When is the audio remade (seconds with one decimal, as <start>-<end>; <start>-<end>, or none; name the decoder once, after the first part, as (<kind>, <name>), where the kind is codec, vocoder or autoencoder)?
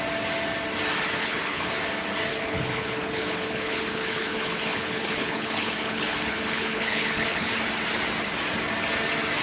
1.2-1.7 (codec, HILCodec); 2.3-7.5